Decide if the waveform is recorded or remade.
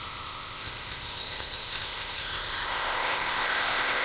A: remade